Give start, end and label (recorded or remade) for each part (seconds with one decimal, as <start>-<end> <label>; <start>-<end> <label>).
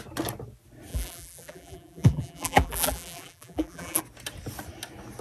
0.0-0.9 recorded; 0.9-4.0 remade; 4.0-5.2 recorded